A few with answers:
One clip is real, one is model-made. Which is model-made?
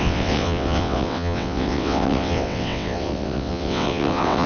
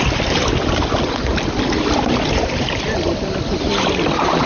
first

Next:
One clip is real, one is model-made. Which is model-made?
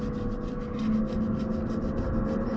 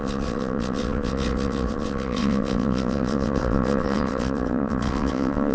second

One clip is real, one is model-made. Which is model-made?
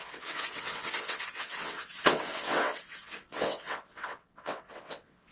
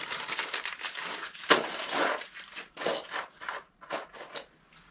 first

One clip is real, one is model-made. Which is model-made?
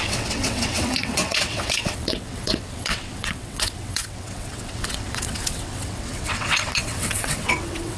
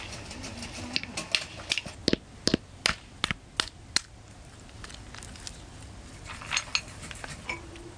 first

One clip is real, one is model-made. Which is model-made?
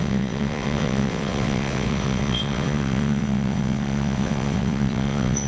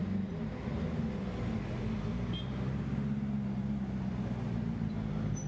first